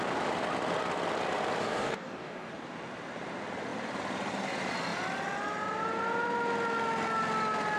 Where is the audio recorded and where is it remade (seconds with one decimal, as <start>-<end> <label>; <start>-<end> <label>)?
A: 0.0-1.6 recorded; 1.6-2.5 remade; 2.5-7.8 recorded